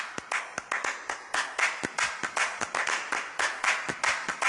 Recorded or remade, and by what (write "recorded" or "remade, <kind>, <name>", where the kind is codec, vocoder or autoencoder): recorded